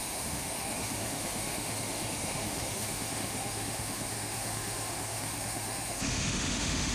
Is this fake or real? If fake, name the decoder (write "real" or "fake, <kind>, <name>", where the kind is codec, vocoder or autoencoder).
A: fake, autoencoder, DAC-VAE